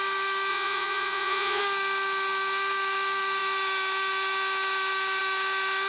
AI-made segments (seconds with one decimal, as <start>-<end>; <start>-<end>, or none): 0.5-1.6